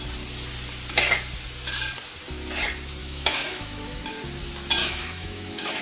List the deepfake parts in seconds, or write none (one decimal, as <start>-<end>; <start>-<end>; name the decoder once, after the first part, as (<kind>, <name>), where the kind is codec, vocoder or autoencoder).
3.0-4.0 (autoencoder, DAC-VAE); 4.8-5.8